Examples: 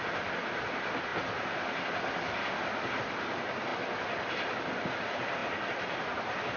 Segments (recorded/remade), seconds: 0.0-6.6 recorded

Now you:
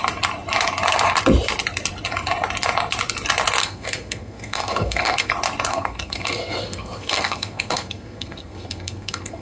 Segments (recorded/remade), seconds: 0.0-3.6 recorded; 3.6-5.3 remade; 5.3-5.7 recorded; 5.7-9.4 remade

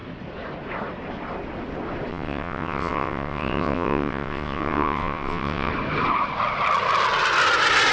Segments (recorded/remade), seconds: 0.0-2.1 recorded; 2.1-5.7 remade; 5.7-7.9 recorded

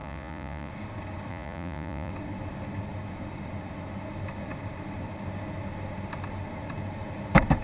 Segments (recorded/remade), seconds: 0.0-0.7 remade; 0.7-1.3 recorded; 1.3-2.1 remade; 2.1-7.6 recorded

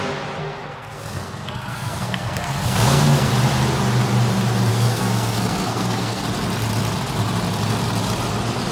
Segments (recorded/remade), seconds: 0.0-0.4 recorded; 0.4-3.3 remade; 3.3-4.7 recorded; 4.7-6.2 remade; 6.2-8.7 recorded